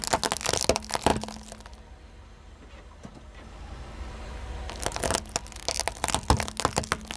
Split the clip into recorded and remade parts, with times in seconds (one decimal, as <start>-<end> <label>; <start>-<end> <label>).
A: 0.0-7.2 recorded